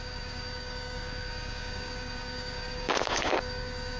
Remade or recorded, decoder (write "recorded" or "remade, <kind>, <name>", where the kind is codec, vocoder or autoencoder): remade, codec, DAC